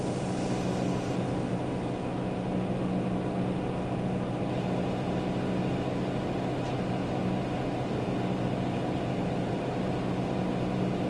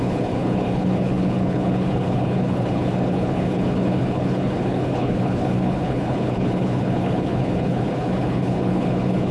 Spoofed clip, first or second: second